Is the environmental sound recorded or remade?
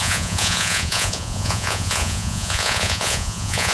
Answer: remade